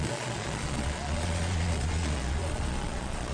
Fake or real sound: fake